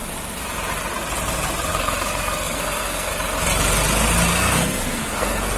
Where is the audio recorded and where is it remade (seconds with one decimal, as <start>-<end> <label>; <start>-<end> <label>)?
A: 0.0-1.7 recorded; 1.7-3.1 remade; 3.1-4.3 recorded; 4.3-5.6 remade